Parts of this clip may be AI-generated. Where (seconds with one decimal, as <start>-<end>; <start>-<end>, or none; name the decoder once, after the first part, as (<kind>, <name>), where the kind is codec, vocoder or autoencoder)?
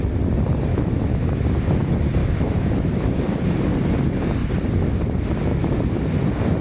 0.7-1.3 (autoencoder, DAC-VAE); 2.2-3.2